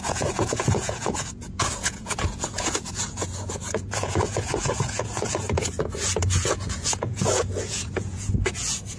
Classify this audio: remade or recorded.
remade